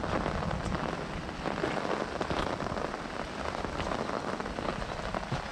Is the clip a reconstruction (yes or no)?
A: no